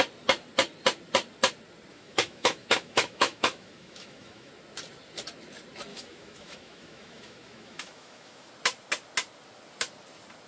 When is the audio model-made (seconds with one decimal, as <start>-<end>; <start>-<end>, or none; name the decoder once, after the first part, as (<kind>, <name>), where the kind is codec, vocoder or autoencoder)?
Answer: 1.9-4.5 (autoencoder, DAC-VAE); 5.9-8.5